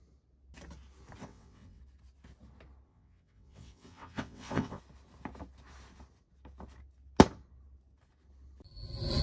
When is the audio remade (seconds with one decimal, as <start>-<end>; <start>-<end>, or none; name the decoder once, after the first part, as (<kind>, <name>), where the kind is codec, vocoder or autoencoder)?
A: 1.2-1.8 (vocoder, WaveNeXt); 2.9-4.8